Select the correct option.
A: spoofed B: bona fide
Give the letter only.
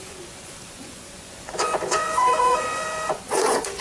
A